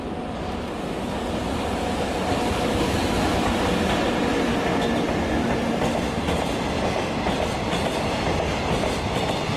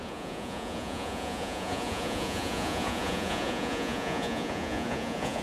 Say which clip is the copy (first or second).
second